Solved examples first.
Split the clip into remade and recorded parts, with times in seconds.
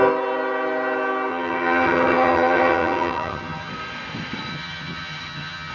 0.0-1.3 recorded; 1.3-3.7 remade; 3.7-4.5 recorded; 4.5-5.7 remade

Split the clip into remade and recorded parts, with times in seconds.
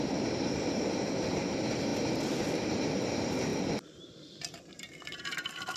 0.0-3.5 remade; 3.5-4.7 recorded; 4.7-5.8 remade